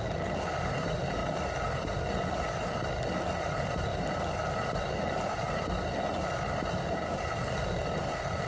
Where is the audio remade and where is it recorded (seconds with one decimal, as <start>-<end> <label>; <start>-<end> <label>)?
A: 0.0-8.5 recorded